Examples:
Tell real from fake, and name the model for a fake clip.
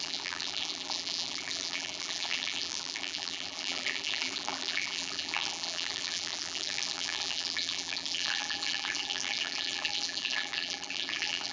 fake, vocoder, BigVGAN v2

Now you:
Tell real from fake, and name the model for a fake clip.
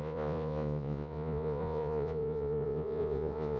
fake, vocoder, Vocos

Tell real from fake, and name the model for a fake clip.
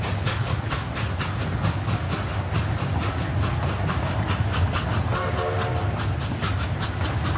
real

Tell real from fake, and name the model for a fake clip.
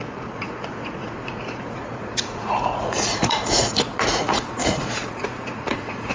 fake, vocoder, Vocos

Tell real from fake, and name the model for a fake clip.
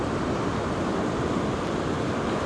real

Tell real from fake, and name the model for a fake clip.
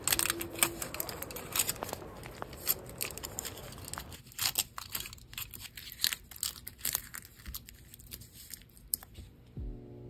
real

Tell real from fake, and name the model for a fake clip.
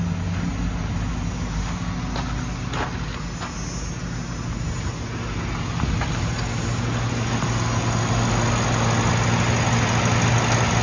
real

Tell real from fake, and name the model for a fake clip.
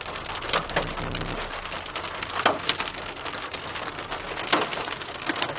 real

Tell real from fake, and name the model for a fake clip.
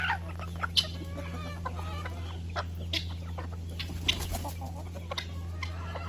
real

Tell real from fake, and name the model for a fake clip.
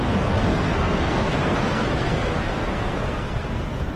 fake, codec, SNAC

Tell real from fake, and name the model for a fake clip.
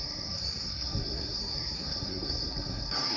fake, codec, SNAC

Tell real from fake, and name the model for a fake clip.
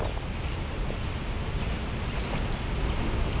real